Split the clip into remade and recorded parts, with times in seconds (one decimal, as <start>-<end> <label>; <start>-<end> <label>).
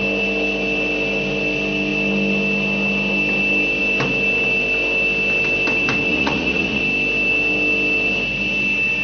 0.0-6.1 recorded; 6.1-6.8 remade; 6.8-9.0 recorded